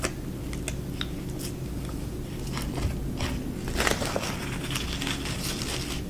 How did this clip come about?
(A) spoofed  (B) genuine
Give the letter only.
B